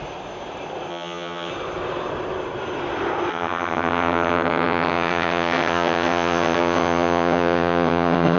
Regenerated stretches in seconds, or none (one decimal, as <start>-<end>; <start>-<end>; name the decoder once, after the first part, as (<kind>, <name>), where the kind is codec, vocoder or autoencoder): 0.9-1.5 (vocoder, HiFi-GAN); 3.3-8.4